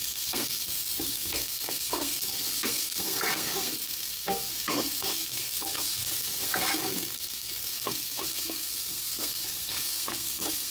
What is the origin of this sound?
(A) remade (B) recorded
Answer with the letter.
A